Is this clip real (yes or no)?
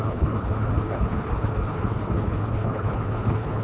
no